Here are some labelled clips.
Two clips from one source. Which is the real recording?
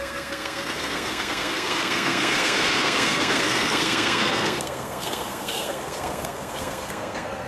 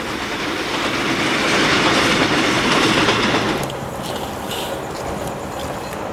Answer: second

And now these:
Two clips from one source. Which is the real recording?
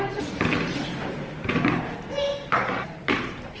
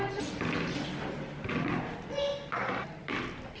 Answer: second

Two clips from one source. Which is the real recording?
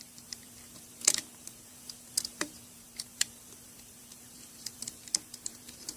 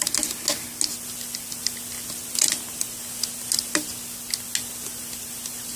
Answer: second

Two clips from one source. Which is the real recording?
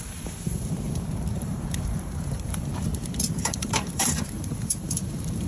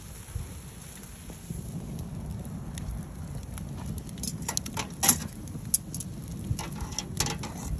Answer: second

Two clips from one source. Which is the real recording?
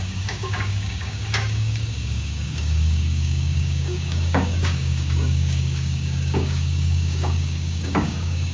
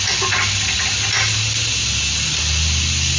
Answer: second